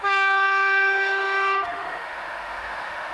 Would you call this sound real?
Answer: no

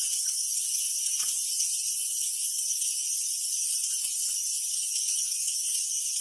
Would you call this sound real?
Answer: no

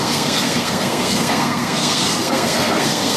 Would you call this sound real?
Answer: no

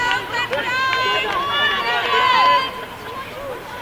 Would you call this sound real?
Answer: yes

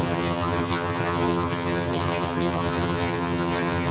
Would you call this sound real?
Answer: no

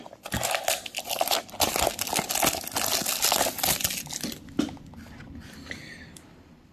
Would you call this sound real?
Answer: yes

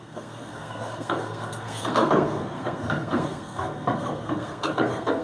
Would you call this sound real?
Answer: no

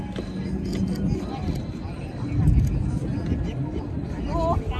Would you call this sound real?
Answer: yes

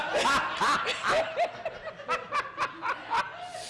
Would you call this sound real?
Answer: yes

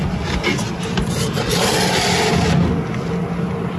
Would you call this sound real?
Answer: yes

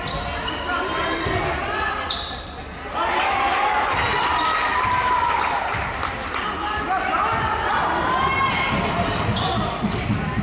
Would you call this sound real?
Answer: yes